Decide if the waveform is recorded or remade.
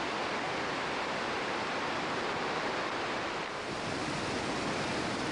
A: recorded